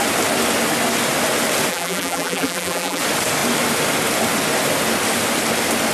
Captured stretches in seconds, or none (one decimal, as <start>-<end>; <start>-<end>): 0.0-1.7; 3.0-5.9